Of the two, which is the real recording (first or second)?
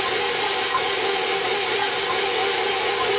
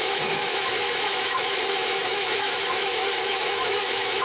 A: first